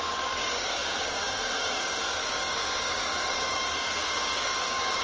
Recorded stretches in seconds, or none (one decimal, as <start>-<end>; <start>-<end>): none